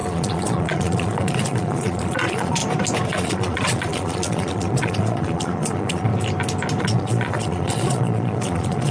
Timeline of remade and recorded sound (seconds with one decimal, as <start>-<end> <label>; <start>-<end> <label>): 0.0-2.6 remade; 2.6-3.1 recorded; 3.1-6.1 remade; 6.1-6.8 recorded; 6.8-8.9 remade

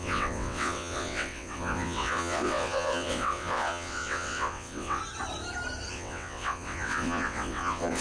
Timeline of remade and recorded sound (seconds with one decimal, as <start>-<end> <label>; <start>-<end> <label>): 0.0-5.0 remade; 5.0-5.9 recorded; 5.9-8.0 remade